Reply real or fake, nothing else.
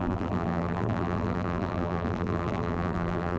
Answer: fake